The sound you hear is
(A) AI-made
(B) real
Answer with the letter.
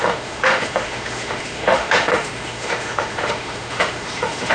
A